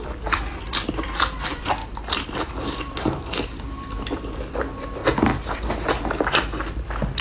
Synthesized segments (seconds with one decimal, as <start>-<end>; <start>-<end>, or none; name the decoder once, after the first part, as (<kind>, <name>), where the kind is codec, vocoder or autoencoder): 0.0-1.8 (vocoder, BigVGAN v2); 2.6-5.0; 6.8-7.2